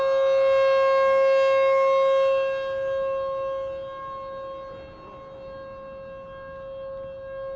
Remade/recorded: recorded